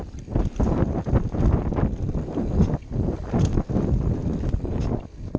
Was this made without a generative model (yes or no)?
yes